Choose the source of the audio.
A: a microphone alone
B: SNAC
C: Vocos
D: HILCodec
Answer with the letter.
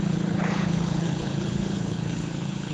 D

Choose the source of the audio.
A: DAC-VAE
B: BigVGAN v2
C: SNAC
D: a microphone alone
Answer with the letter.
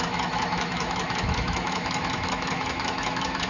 A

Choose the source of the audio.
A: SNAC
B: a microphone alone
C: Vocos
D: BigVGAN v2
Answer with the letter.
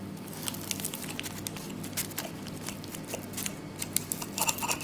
B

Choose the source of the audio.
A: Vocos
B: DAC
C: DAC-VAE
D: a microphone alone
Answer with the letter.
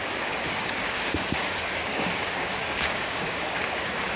B